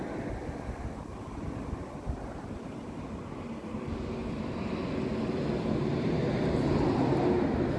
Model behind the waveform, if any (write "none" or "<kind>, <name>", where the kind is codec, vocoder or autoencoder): none